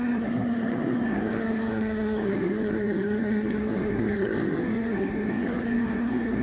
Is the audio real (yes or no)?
no